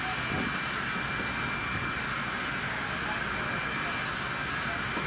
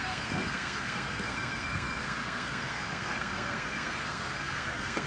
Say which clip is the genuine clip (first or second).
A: first